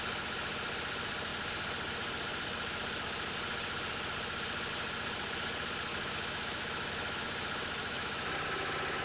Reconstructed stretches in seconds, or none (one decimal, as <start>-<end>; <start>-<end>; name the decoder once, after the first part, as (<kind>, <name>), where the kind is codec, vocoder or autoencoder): 5.9-6.9 (autoencoder, DAC-VAE); 7.8-8.3